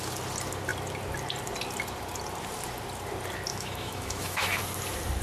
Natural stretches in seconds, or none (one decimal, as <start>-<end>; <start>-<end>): 0.0-3.5; 4.6-5.2